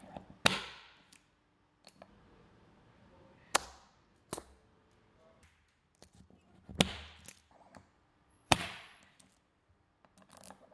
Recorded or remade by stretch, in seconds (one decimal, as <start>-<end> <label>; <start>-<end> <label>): 0.0-8.3 recorded; 8.3-9.0 remade; 9.0-10.7 recorded